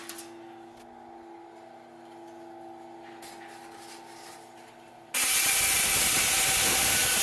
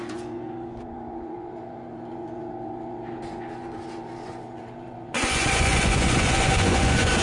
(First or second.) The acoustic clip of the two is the first